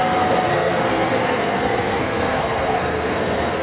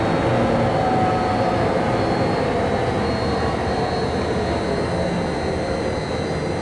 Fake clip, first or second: first